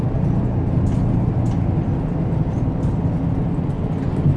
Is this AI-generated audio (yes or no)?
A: no